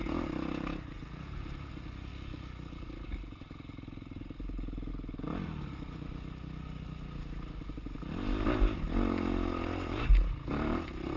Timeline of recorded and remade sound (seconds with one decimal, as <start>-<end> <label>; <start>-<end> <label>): 0.0-11.2 recorded